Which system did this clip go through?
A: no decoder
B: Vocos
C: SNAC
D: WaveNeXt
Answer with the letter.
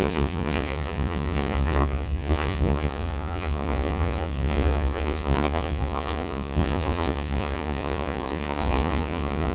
B